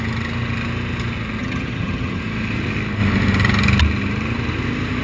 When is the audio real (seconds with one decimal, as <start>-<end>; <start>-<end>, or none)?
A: 0.0-1.4; 2.2-5.0